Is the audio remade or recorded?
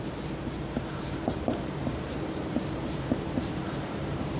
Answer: remade